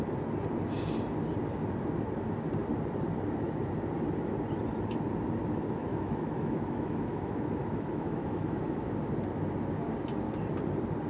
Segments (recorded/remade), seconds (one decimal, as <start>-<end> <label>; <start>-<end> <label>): 0.0-5.9 recorded; 5.9-8.9 remade; 8.9-11.1 recorded